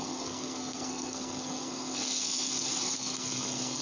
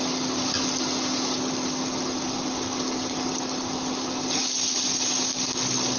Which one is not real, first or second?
first